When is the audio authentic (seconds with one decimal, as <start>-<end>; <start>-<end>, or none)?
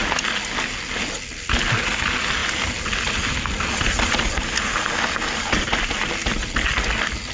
0.0-7.3